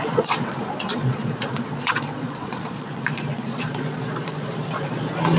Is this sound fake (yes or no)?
yes